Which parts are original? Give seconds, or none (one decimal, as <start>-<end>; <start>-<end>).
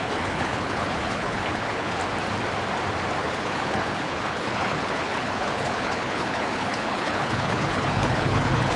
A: 2.0-3.2